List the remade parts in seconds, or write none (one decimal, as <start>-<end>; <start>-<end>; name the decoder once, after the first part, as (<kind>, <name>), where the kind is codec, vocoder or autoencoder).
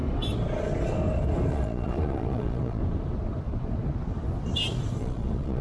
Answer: 1.5-2.8 (vocoder, Vocos); 5.0-5.6